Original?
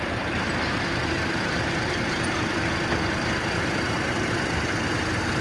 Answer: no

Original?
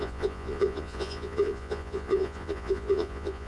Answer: no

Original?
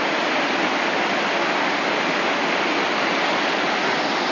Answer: yes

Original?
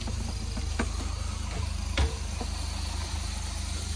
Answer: yes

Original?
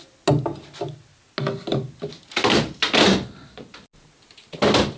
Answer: yes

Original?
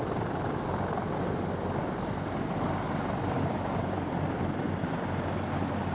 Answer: yes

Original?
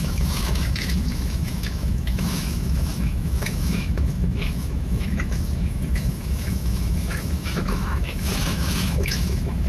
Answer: no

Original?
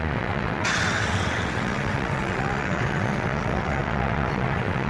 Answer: no